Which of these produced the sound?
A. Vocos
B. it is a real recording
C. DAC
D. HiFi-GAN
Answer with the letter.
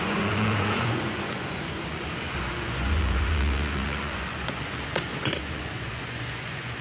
A